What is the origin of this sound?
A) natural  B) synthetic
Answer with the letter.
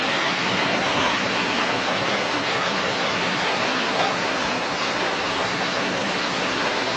B